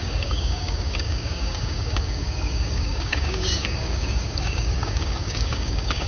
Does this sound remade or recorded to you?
remade